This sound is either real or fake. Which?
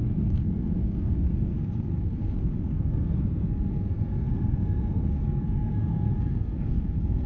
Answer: fake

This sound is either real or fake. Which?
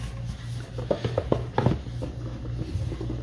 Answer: real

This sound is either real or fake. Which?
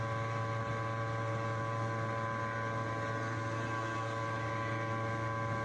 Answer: real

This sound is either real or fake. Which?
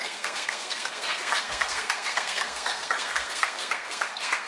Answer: fake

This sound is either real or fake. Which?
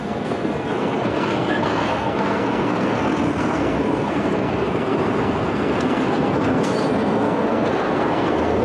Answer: fake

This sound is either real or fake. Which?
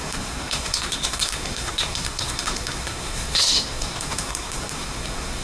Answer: fake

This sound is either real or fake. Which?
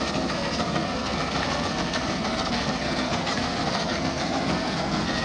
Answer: fake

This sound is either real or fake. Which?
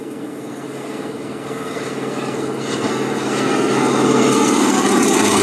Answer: fake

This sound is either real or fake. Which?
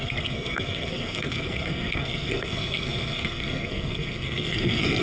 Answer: fake